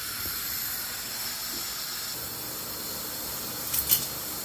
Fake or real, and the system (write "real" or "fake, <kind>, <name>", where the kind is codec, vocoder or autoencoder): real